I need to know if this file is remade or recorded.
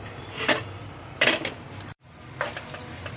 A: remade